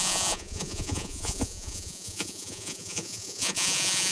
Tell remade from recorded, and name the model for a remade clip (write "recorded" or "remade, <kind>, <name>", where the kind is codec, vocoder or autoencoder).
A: remade, vocoder, Vocos